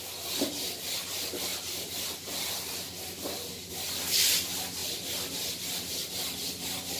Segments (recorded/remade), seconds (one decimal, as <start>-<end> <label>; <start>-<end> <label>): 0.0-1.5 recorded; 1.5-3.7 remade; 3.7-7.0 recorded